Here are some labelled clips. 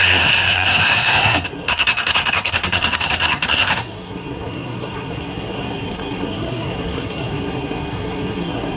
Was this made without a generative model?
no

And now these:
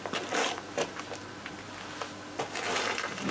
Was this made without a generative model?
yes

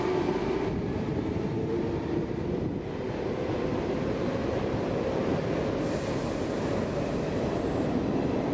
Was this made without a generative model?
yes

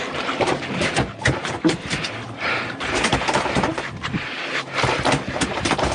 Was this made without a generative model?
no